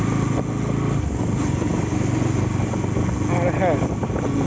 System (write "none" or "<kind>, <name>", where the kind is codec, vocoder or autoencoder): none